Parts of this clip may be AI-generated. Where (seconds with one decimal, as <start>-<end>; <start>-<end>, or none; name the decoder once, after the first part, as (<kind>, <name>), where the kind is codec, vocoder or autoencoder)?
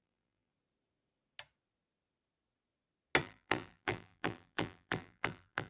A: 0.0-0.5 (vocoder, BigVGAN v2); 3.2-5.7